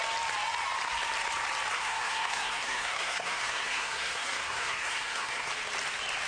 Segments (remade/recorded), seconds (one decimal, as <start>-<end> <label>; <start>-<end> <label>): 0.0-1.7 recorded; 1.7-5.5 remade; 5.5-6.3 recorded